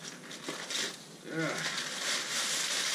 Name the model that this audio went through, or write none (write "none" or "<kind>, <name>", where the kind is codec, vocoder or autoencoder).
none